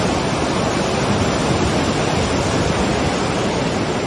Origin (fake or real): real